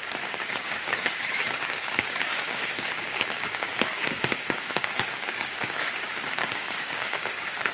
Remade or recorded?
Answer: remade